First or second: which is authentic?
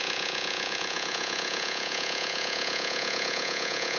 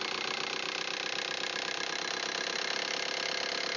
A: second